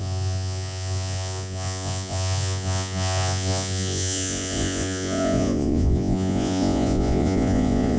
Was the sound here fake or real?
fake